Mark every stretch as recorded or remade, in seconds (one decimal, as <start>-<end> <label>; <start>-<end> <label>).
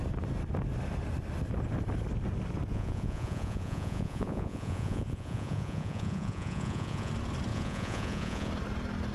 0.0-2.7 recorded; 2.7-7.1 remade; 7.1-7.5 recorded; 7.5-8.5 remade; 8.5-9.1 recorded